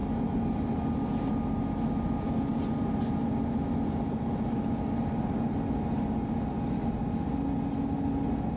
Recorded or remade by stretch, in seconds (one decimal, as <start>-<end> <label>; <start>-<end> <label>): 0.0-8.6 recorded